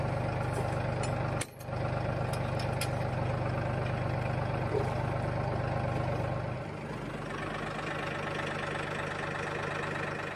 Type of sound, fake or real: real